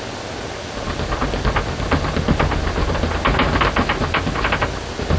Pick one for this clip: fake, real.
real